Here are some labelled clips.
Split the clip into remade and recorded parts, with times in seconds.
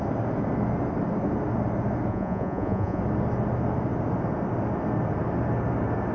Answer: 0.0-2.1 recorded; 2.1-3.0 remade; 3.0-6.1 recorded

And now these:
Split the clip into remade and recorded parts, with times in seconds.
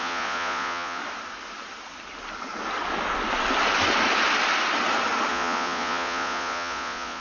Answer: 0.0-1.0 remade; 1.0-5.3 recorded; 5.3-7.2 remade